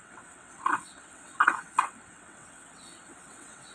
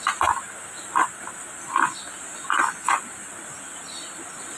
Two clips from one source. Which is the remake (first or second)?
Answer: first